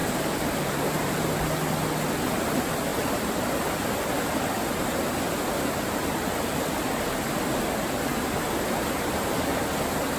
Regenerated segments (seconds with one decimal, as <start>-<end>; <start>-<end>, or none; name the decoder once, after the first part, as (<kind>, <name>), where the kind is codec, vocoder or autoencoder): 0.0-1.4 (vocoder, BigVGAN v2); 8.1-9.3

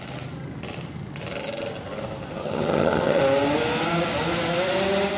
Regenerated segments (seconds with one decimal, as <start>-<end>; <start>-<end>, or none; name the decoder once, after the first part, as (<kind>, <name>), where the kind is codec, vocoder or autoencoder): 2.4-3.2 (vocoder, HiFi-GAN)

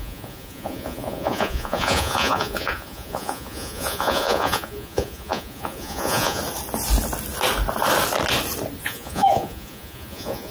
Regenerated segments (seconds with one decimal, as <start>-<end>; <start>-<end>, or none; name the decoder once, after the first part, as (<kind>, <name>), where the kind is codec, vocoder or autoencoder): 0.0-6.4 (vocoder, Vocos); 8.8-10.5